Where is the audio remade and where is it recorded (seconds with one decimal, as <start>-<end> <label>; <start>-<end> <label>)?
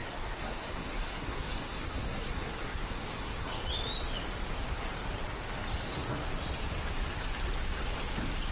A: 0.0-3.6 remade; 3.6-8.5 recorded